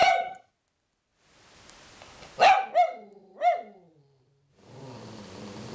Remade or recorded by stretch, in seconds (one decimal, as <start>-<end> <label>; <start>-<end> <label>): 0.0-0.5 remade; 0.5-5.7 recorded